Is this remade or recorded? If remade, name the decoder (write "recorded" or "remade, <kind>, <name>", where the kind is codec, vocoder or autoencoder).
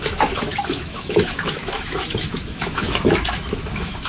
remade, autoencoder, DAC-VAE